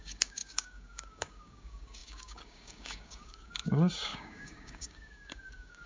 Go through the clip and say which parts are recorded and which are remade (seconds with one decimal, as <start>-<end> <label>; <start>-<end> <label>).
0.0-5.9 remade